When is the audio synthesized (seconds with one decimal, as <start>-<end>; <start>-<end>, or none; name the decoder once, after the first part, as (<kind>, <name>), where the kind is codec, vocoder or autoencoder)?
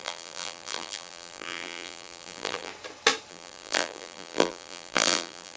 0.0-2.7 (vocoder, BigVGAN v2); 3.3-5.6